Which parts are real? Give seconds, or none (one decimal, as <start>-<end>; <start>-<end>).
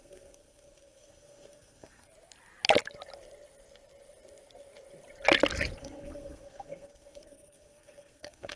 2.1-5.8